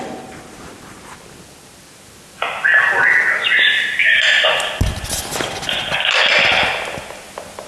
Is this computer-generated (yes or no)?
no